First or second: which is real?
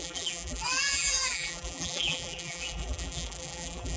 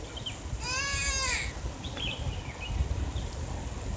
second